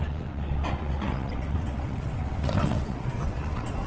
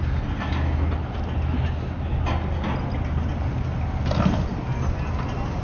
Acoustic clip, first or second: second